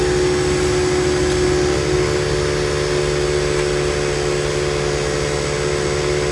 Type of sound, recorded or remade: recorded